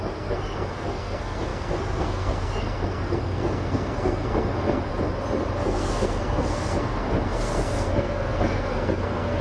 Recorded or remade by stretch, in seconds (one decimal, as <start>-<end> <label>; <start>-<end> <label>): 0.0-4.9 remade; 4.9-5.6 recorded; 5.6-9.4 remade